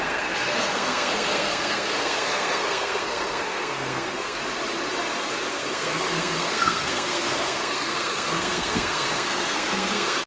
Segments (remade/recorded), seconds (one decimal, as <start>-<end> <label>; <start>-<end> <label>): 0.0-4.4 remade; 4.4-5.5 recorded; 5.5-10.3 remade